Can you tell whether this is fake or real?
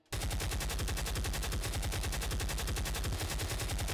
real